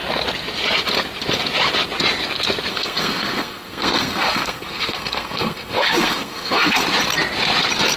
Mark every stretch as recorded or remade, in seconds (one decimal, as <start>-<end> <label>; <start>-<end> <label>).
0.0-2.7 recorded; 2.7-6.8 remade; 6.8-8.0 recorded